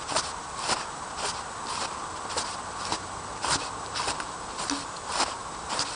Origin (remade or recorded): recorded